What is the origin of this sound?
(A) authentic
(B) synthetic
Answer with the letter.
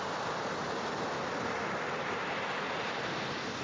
A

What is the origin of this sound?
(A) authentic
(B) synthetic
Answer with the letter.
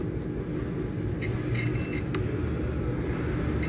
A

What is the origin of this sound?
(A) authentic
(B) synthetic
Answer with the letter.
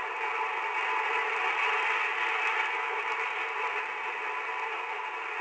A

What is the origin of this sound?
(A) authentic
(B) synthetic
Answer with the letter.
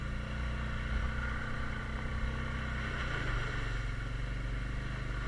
A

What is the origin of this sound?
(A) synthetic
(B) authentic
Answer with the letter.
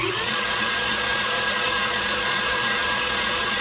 A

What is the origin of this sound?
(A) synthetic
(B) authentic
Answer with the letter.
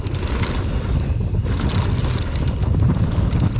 A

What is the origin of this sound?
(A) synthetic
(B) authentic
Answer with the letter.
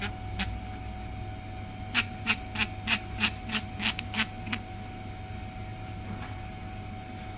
B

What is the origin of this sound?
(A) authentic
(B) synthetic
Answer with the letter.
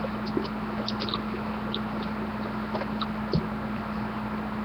A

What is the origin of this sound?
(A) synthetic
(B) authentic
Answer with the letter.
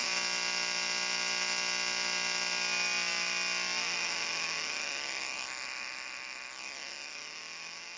B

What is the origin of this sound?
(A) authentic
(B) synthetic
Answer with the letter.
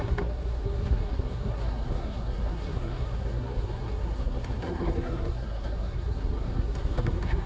B